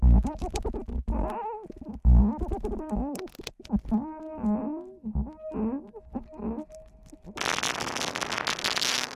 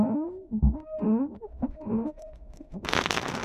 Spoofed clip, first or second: second